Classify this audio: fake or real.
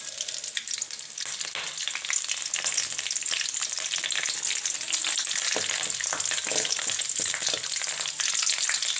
real